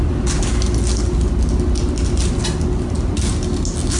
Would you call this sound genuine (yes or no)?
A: yes